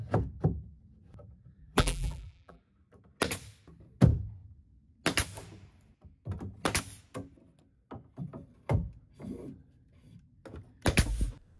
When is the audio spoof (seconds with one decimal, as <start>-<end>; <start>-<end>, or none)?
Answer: 1.6-2.6